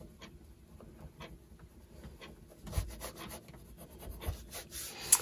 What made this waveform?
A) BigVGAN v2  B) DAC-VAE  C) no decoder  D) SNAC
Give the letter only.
C